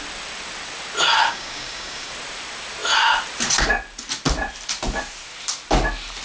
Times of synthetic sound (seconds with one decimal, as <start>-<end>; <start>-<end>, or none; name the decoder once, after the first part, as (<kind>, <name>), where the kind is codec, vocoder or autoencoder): 1.2-2.1 (codec, DAC)